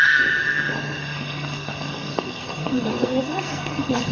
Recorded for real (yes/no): no